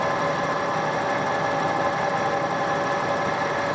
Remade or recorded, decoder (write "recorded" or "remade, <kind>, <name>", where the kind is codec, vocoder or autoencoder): recorded